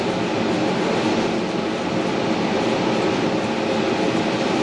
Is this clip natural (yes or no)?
yes